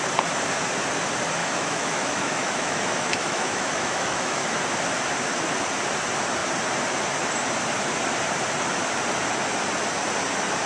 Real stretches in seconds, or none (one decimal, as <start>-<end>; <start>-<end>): 0.0-1.4; 4.6-10.7